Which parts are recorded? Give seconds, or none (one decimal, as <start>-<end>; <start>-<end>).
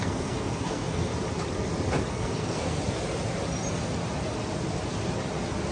1.1-2.1; 2.8-5.7